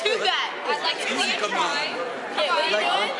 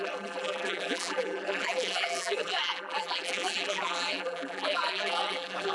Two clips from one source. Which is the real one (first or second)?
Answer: first